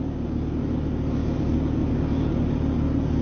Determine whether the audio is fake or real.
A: real